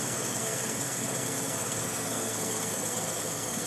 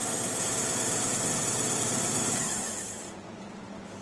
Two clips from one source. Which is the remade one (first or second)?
first